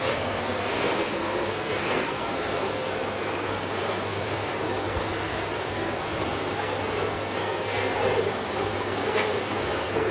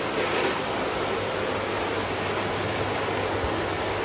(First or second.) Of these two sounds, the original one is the second